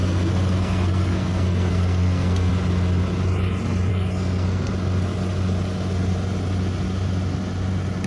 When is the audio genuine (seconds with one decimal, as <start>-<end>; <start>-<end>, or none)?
2.5-3.9; 4.7-8.1